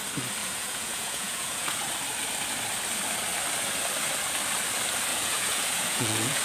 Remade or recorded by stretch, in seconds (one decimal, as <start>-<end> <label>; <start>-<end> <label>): 0.0-0.4 recorded; 0.4-1.9 remade; 1.9-5.1 recorded; 5.1-6.4 remade